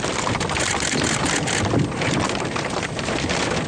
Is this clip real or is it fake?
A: real